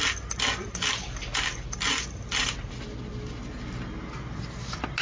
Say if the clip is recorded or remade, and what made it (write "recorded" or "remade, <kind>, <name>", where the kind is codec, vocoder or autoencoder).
recorded